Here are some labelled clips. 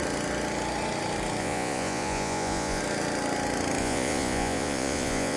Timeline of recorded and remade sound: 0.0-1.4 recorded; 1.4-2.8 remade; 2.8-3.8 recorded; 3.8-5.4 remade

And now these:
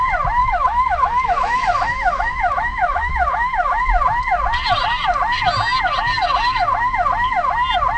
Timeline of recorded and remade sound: 0.0-0.4 recorded; 0.4-3.8 remade; 3.8-8.0 recorded

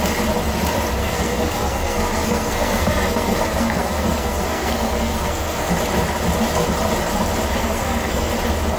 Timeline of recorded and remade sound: 0.0-1.0 recorded; 1.0-5.7 remade; 5.7-7.6 recorded; 7.6-8.3 remade; 8.3-8.8 recorded